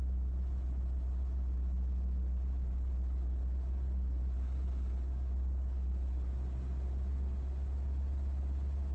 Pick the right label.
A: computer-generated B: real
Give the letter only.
B